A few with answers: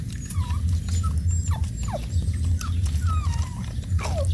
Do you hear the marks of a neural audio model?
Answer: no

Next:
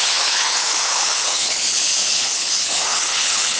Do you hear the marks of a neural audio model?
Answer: yes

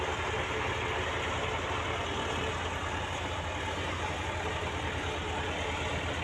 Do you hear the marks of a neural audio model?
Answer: no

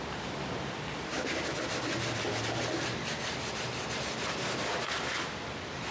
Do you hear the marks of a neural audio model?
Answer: no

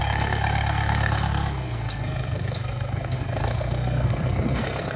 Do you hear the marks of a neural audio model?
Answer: yes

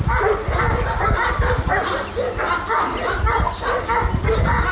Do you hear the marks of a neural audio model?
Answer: no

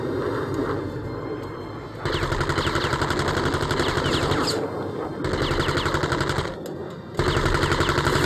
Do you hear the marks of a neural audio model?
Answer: no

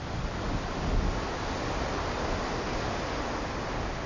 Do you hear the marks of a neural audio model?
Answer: no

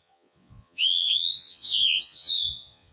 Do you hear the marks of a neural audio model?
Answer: yes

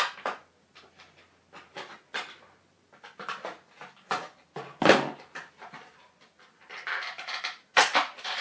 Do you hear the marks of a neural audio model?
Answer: no